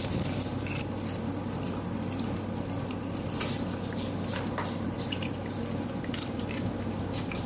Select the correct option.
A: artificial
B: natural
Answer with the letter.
A